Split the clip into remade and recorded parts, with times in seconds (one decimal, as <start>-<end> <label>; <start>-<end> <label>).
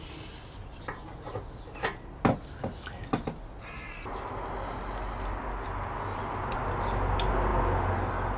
0.0-8.4 recorded